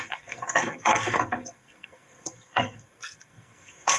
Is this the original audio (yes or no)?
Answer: no